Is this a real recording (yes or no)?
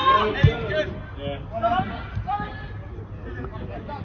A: yes